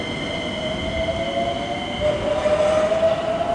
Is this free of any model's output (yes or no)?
yes